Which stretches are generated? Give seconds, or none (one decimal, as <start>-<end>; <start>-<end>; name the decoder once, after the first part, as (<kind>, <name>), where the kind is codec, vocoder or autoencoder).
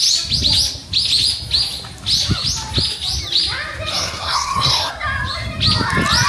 3.9-4.9 (codec, SNAC)